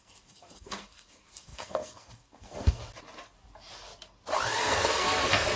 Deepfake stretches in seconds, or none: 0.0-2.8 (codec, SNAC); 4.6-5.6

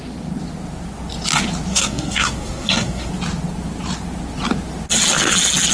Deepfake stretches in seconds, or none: 1.7-3.1 (codec, SNAC)

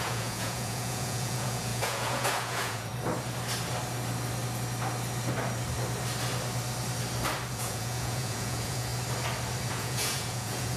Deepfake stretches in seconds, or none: 0.0-2.9 (vocoder, Vocos); 7.5-8.9; 9.7-10.8